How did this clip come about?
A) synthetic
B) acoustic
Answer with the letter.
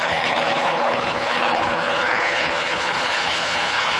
A